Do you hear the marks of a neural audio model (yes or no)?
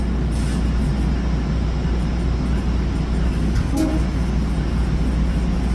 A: no